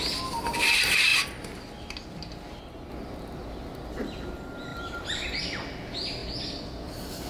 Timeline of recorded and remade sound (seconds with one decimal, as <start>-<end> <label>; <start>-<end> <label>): 0.0-4.7 recorded; 4.7-5.4 remade; 5.4-7.3 recorded